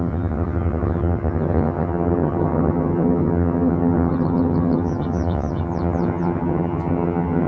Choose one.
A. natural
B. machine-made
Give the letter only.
B